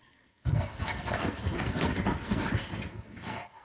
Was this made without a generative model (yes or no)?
no